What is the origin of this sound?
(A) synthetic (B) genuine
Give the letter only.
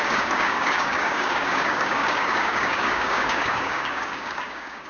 A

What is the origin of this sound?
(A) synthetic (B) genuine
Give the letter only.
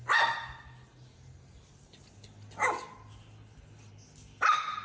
B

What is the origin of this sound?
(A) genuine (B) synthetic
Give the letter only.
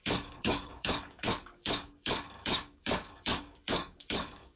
B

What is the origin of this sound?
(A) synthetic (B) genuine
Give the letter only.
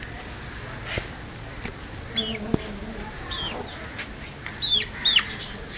B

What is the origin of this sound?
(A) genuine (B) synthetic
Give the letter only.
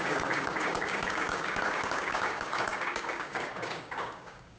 B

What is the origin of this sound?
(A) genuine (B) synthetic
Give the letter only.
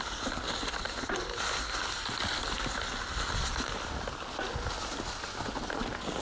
A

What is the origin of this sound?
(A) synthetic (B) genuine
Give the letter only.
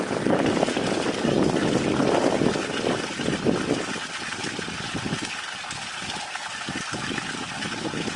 B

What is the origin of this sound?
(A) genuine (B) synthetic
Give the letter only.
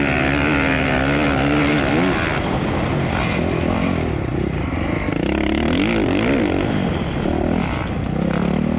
A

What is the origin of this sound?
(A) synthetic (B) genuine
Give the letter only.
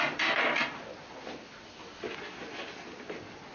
B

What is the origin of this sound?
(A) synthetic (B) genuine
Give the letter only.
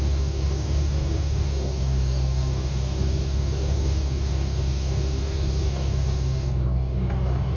A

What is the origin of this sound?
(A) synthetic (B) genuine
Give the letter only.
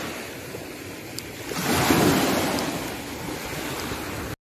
B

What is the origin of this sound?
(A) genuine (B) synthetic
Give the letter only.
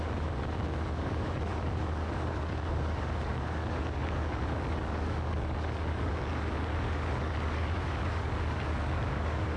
B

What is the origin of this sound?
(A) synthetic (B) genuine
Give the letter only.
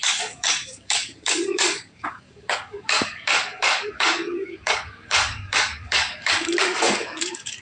A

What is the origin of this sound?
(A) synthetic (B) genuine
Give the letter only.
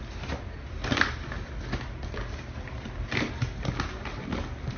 B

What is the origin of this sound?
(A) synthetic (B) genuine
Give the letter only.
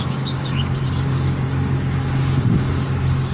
A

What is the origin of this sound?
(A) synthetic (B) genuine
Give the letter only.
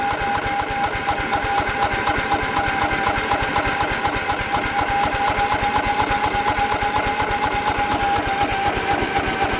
B